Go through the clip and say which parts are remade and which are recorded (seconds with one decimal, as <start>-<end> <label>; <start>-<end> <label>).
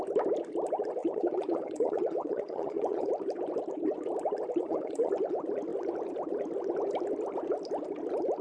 0.0-1.0 recorded; 1.0-3.1 remade; 3.1-4.6 recorded; 4.6-5.1 remade; 5.1-8.4 recorded